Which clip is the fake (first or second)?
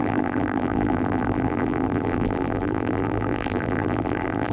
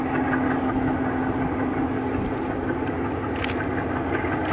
first